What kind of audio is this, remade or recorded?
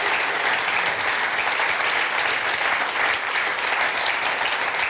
recorded